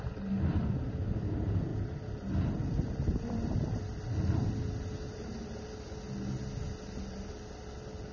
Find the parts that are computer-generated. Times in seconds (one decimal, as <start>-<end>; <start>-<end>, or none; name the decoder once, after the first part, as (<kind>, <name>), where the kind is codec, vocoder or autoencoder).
1.7-4.5 (vocoder, BigVGAN v2)